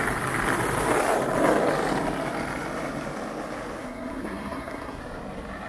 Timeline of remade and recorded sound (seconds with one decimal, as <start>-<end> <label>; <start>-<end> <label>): 0.0-3.8 recorded; 3.8-5.0 remade; 5.0-5.7 recorded